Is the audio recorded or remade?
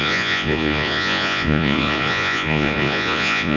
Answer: remade